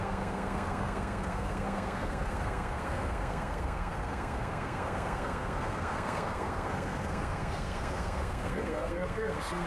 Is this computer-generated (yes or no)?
yes